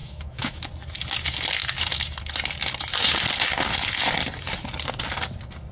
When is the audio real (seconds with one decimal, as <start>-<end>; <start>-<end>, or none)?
0.7-5.7